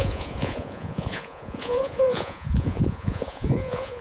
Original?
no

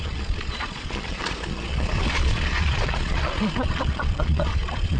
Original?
no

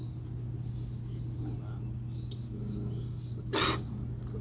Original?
yes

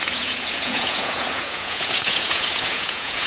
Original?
no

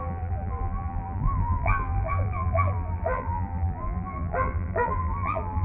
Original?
no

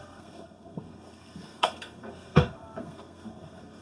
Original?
no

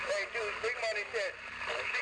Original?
yes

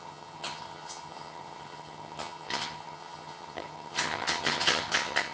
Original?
no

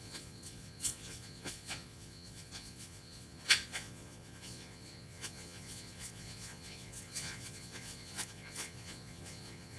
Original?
no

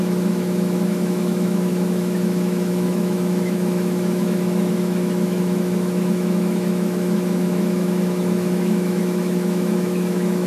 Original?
no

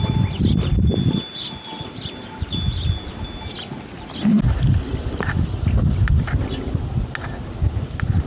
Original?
yes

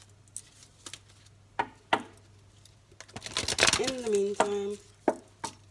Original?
yes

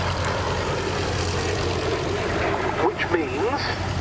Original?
no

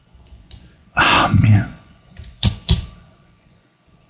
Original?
no